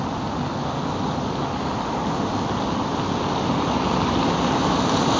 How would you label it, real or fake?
real